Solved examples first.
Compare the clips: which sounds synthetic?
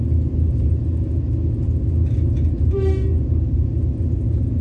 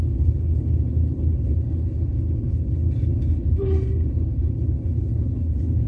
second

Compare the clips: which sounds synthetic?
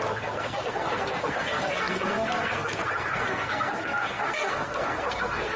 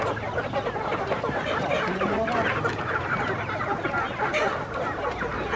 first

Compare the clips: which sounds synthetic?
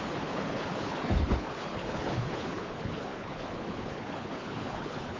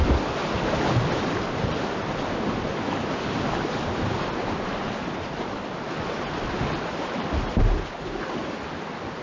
first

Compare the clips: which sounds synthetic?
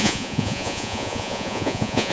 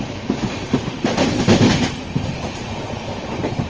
first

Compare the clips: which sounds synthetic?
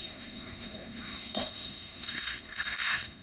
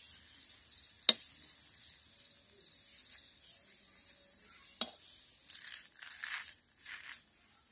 first